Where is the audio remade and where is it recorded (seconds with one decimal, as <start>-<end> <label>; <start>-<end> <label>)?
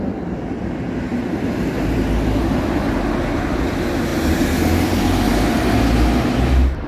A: 0.0-1.1 recorded; 1.1-2.4 remade; 2.4-6.9 recorded